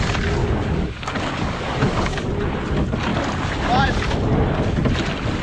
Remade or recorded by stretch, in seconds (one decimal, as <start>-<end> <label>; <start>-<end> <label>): 0.0-0.4 recorded; 0.4-2.3 remade; 2.3-5.4 recorded